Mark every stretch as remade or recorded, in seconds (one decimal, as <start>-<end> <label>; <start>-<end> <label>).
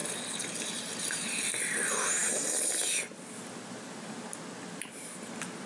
0.0-5.7 recorded